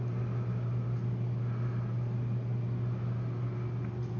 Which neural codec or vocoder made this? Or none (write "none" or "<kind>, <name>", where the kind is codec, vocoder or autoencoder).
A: none